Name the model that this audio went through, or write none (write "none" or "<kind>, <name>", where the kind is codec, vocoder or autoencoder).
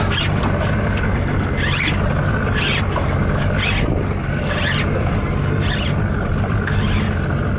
none